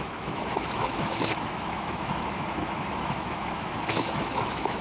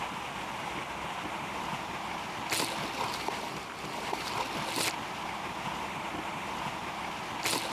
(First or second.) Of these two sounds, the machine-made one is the first